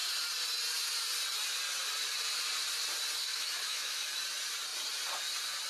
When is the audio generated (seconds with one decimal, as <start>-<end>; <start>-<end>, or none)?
3.2-4.1